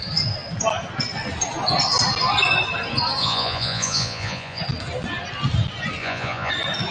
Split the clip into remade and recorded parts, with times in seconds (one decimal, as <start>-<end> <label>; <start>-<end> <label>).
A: 0.0-3.2 recorded; 3.2-4.6 remade; 4.6-6.0 recorded; 6.0-6.5 remade; 6.5-6.9 recorded